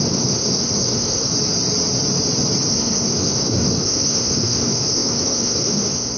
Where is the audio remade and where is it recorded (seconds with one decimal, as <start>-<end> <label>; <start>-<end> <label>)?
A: 0.0-1.3 remade; 1.3-2.7 recorded; 2.7-6.2 remade